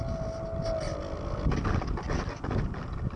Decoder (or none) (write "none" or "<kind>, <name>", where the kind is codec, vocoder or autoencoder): none